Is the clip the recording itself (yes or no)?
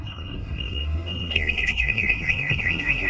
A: no